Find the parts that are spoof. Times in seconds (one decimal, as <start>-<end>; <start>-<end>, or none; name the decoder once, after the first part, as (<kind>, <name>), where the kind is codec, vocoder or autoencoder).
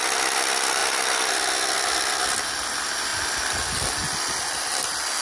none